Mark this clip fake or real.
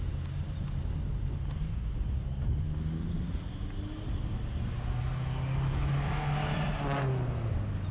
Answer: real